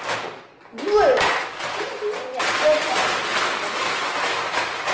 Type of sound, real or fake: real